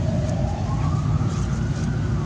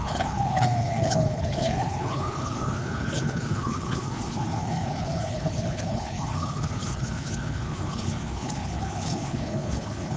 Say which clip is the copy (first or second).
second